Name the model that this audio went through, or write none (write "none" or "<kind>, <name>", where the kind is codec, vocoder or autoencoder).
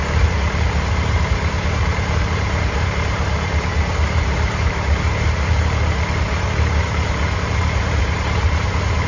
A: vocoder, BigVGAN v2